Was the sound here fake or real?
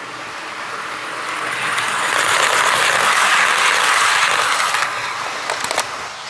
real